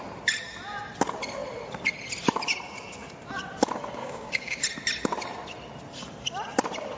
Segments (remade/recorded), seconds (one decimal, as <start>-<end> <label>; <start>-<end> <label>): 0.0-4.0 recorded; 4.0-4.6 remade; 4.6-7.0 recorded